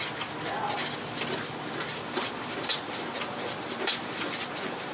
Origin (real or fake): fake